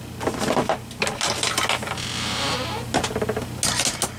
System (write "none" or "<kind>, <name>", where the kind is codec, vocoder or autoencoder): none